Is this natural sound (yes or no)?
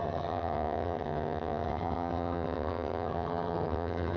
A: no